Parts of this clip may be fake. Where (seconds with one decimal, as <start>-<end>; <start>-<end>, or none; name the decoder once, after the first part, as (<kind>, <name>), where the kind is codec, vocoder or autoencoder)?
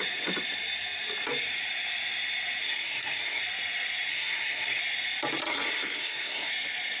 2.6-3.4 (codec, SNAC); 4.1-4.8; 5.5-6.5